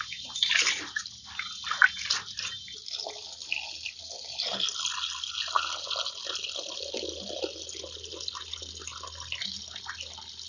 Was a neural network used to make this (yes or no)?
no